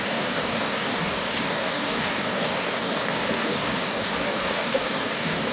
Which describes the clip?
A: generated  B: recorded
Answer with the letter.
A